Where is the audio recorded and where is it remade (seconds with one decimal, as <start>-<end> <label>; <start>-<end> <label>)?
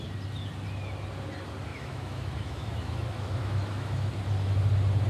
0.0-1.7 recorded; 1.7-4.1 remade; 4.1-5.1 recorded